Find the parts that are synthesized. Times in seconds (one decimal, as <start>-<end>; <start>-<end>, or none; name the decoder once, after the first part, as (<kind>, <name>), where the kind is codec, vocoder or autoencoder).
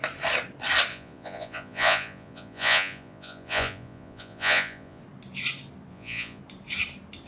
0.9-5.0 (vocoder, Vocos); 5.9-6.4